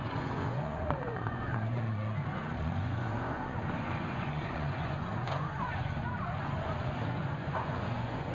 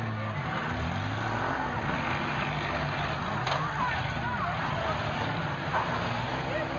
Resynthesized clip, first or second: first